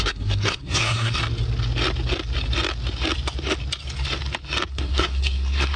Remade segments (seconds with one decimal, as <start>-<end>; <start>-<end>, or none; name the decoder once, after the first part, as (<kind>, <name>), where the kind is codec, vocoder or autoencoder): 0.0-1.2 (codec, SNAC); 4.7-5.8